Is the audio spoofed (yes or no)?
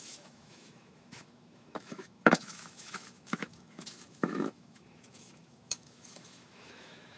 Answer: yes